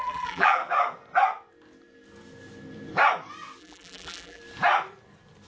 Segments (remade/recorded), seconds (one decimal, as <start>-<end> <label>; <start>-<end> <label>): 0.0-0.6 remade; 0.6-3.6 recorded; 3.6-4.4 remade; 4.4-5.5 recorded